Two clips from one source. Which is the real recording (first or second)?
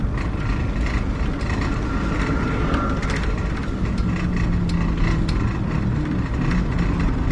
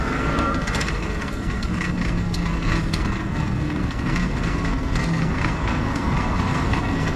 first